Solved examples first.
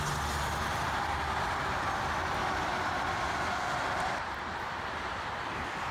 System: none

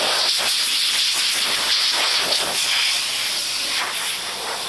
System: none